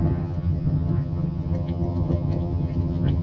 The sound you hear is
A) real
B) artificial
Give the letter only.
B